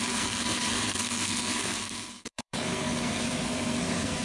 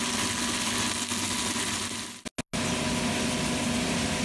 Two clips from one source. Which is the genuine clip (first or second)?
second